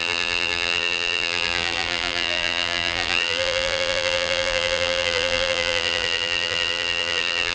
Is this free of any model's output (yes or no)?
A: no